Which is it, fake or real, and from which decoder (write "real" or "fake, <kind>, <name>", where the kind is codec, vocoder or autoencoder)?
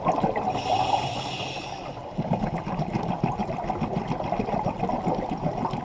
real